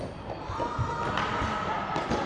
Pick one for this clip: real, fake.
real